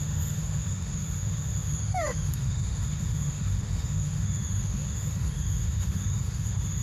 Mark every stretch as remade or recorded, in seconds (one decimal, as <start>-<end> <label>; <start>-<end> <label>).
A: 0.0-6.8 remade

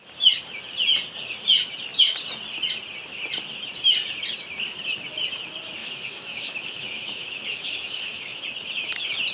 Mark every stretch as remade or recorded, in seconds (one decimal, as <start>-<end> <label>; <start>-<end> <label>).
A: 0.0-5.8 recorded; 5.8-8.4 remade; 8.4-9.3 recorded

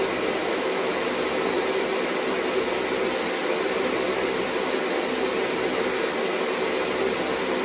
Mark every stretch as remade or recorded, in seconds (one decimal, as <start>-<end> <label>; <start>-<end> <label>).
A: 0.0-0.4 recorded; 0.4-0.9 remade; 0.9-7.6 recorded